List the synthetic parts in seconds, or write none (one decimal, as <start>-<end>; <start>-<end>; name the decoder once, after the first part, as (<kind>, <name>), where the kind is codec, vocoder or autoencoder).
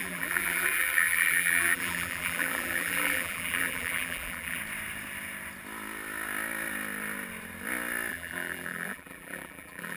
0.0-4.6 (vocoder, BigVGAN v2); 8.1-10.0